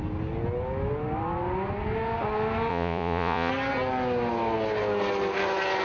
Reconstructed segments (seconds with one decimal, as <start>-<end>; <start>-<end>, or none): 2.7-3.5